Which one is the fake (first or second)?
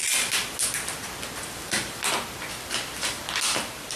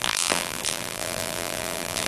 second